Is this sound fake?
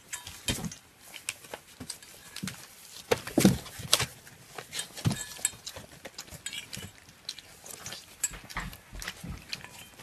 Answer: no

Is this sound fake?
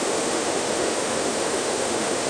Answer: yes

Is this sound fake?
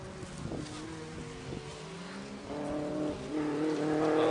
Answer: no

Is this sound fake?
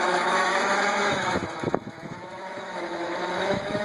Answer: yes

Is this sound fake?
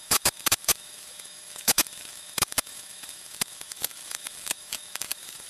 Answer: yes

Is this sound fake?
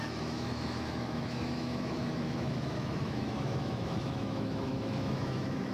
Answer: yes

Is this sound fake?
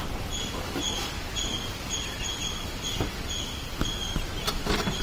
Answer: no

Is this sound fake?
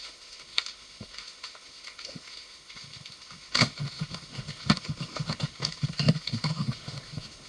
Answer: yes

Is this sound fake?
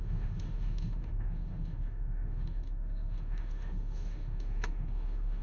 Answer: yes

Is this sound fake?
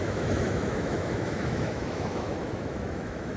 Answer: yes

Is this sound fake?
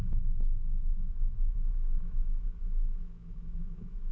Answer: yes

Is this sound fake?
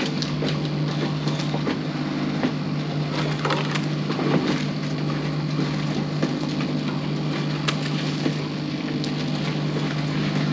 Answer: no